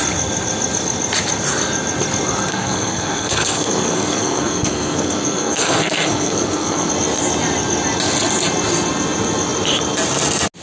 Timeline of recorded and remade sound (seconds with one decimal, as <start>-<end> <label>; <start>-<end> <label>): 0.0-2.5 recorded; 2.5-6.9 remade; 6.9-10.6 recorded